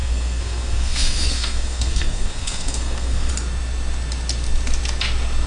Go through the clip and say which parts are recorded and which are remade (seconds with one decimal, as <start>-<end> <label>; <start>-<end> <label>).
0.0-3.3 remade; 3.3-5.5 recorded